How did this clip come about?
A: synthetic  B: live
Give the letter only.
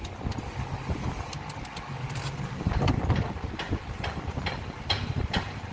B